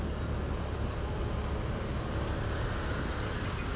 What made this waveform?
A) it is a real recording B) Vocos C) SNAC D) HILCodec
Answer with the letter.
A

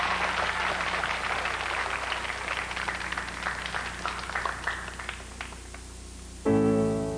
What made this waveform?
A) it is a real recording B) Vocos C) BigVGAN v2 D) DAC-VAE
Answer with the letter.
A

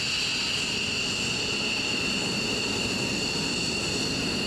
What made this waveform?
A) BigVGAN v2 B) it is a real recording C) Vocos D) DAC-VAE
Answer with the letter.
B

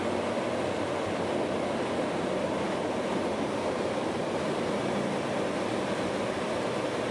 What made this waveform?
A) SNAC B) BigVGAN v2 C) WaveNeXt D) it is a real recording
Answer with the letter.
D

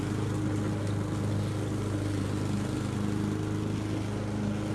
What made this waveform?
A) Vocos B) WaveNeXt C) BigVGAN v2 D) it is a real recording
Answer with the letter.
D